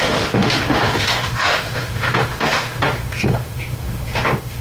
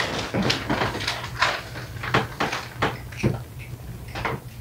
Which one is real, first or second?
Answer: second